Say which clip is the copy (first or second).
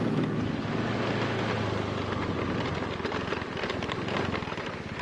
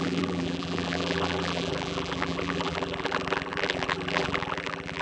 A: second